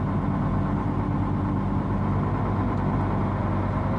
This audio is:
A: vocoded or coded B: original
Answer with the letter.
B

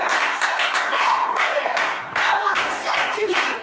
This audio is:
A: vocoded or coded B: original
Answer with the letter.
A